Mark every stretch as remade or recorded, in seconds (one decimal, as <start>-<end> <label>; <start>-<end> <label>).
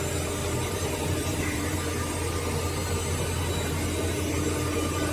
0.0-0.4 recorded; 0.4-1.8 remade; 1.8-5.1 recorded